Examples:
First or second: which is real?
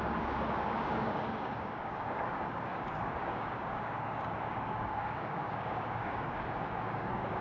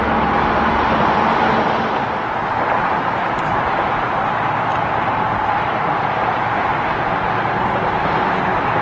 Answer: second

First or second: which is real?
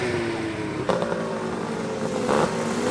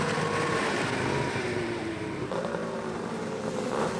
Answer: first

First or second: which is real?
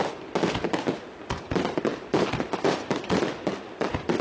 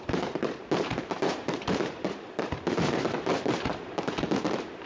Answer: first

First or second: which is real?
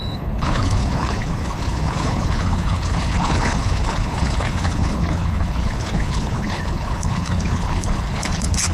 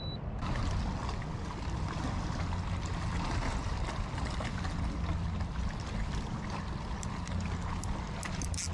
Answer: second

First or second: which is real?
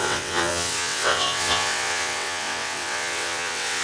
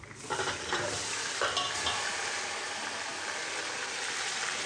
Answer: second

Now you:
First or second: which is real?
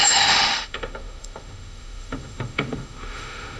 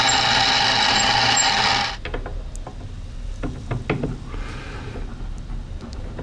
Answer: second